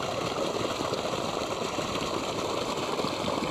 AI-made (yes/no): no